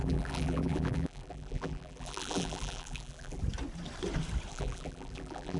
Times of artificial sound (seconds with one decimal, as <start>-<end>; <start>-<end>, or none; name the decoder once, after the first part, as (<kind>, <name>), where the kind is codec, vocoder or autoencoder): 0.0-3.4 (vocoder, BigVGAN v2); 4.5-5.6